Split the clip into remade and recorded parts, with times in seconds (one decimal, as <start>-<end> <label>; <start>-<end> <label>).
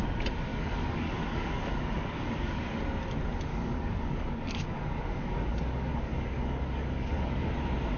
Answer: 0.0-0.5 recorded; 0.5-2.8 remade; 2.8-3.5 recorded; 3.5-7.5 remade; 7.5-8.0 recorded